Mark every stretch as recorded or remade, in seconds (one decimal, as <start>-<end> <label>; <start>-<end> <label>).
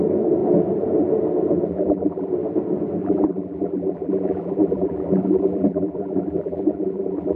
0.0-1.7 recorded; 1.7-2.3 remade; 2.3-3.0 recorded; 3.0-7.4 remade